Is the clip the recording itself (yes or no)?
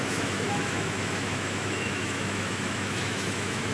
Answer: no